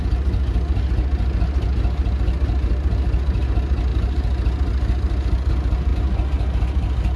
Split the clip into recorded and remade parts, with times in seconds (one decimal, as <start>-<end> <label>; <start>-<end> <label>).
0.0-7.2 recorded